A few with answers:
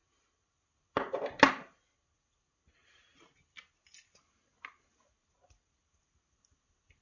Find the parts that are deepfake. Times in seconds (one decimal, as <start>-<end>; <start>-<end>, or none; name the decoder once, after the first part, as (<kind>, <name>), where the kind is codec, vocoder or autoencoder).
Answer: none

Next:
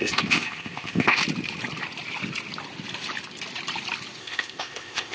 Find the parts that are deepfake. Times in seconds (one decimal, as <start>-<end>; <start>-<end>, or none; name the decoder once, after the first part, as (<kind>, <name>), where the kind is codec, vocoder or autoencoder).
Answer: 0.0-1.2 (codec, ZipCodec); 4.2-5.1

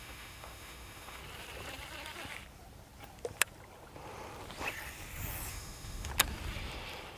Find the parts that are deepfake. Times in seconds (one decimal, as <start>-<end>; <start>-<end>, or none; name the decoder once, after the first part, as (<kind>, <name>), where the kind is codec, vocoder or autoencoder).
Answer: 0.0-1.2 (autoencoder, DAC-VAE); 5.5-6.1

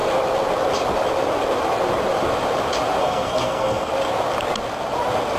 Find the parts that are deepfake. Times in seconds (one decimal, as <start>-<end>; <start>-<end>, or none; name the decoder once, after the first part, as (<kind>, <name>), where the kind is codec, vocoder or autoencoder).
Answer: 3.0-3.9 (codec, SNAC)